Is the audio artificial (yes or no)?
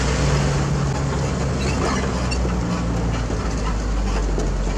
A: no